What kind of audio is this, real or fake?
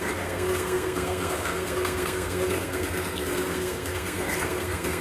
fake